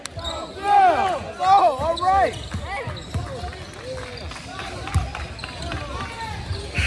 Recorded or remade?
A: recorded